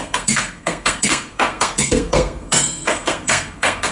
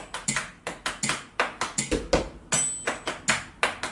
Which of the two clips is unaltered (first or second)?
second